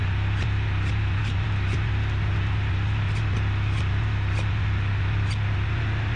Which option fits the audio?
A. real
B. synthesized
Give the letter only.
A